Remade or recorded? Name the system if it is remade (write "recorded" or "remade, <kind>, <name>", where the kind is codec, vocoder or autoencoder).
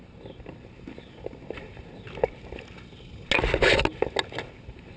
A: recorded